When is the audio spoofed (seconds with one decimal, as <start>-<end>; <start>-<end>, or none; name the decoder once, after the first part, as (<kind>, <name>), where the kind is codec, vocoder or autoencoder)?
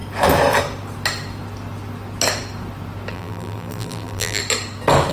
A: 3.1-4.4 (vocoder, BigVGAN v2)